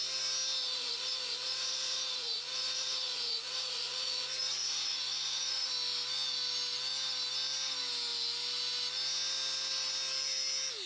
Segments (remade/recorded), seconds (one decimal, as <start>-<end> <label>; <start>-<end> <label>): 0.0-0.6 recorded; 0.6-5.7 remade; 5.7-10.9 recorded